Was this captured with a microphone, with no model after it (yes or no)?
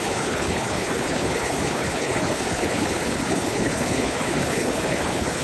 no